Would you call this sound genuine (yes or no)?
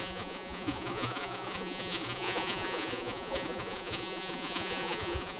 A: no